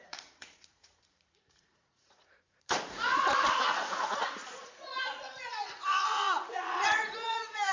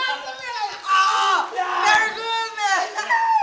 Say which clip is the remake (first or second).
first